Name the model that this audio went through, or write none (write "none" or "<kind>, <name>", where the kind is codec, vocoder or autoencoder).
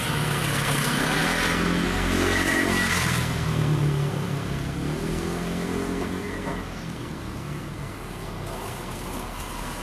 codec, SNAC